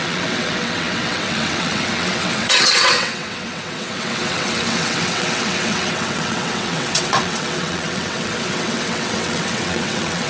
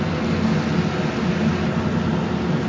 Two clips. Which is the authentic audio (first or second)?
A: second